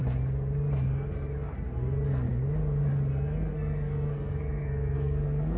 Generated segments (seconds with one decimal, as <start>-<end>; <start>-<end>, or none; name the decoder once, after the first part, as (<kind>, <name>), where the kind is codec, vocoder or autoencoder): 3.5-5.6 (codec, SNAC)